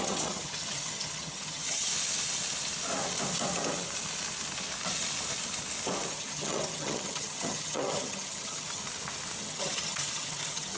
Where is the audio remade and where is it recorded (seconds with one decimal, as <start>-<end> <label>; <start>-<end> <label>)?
0.0-1.9 remade; 1.9-6.1 recorded; 6.1-8.8 remade; 8.8-9.4 recorded; 9.4-10.8 remade